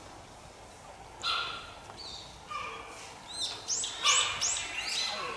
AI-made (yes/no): no